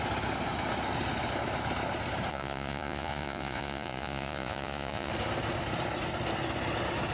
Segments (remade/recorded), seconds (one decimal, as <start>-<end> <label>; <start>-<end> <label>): 0.0-2.3 recorded; 2.3-5.1 remade; 5.1-7.1 recorded